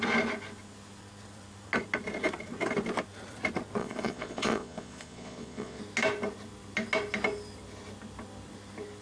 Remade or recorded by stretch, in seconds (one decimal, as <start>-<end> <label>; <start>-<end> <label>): 0.0-3.8 recorded; 3.8-5.8 remade; 5.8-9.0 recorded